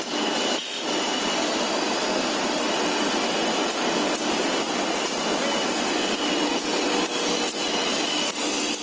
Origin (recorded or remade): recorded